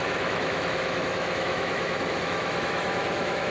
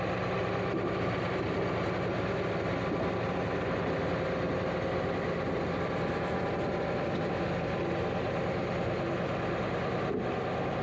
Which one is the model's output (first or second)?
first